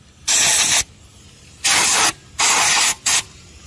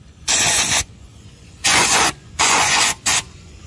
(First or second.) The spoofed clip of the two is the second